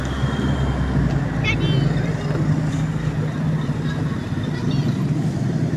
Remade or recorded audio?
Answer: recorded